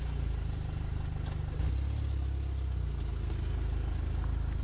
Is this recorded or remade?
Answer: recorded